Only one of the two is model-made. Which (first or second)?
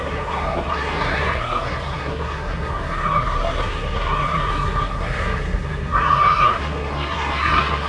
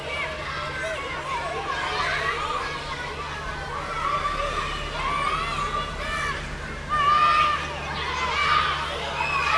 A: first